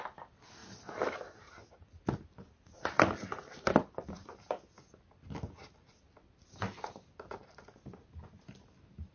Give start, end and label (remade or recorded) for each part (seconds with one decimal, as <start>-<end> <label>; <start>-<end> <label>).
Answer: 0.0-9.1 recorded